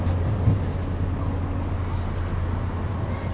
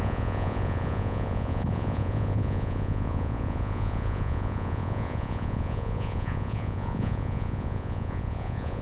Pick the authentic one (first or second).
first